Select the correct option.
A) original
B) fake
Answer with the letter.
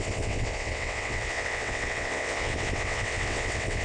B